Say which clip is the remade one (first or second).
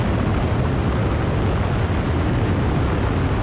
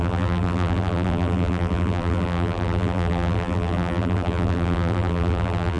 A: second